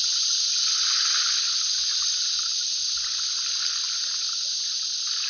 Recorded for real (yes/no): yes